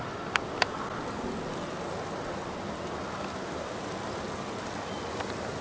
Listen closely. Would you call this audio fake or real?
real